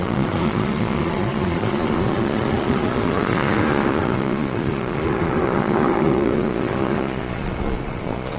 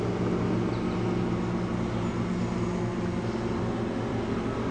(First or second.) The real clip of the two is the second